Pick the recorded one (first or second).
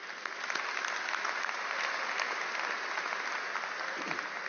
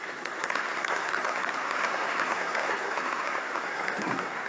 first